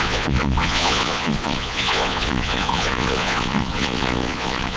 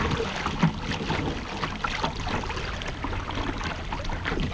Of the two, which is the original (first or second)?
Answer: second